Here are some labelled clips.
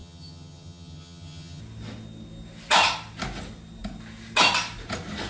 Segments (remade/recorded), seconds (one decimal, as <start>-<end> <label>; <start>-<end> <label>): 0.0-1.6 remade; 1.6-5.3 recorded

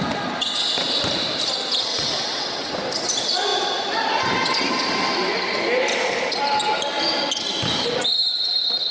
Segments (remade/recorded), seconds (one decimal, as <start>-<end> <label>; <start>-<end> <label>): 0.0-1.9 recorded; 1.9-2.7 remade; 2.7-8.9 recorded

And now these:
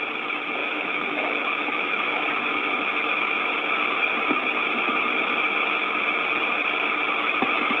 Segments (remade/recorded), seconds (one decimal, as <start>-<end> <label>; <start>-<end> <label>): 0.0-0.6 recorded; 0.6-2.2 remade; 2.2-7.8 recorded

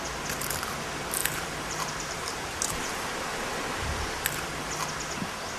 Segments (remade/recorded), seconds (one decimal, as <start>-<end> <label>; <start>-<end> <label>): 0.0-1.2 recorded; 1.2-3.1 remade; 3.1-5.6 recorded

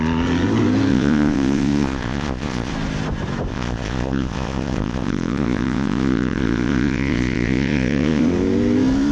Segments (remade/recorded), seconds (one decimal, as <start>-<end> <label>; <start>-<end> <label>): 0.0-0.9 recorded; 0.9-2.7 remade; 2.7-3.5 recorded; 3.5-8.2 remade; 8.2-9.1 recorded